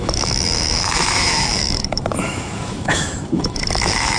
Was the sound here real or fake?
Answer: fake